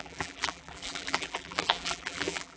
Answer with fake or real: fake